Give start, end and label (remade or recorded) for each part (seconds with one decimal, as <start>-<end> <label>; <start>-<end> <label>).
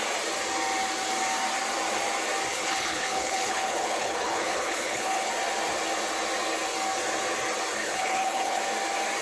0.0-2.5 recorded; 2.5-5.3 remade; 5.3-7.8 recorded; 7.8-8.6 remade; 8.6-9.2 recorded